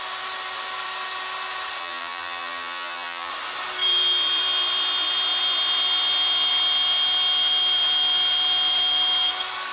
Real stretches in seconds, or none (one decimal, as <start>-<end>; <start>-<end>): 0.0-1.8; 3.3-9.7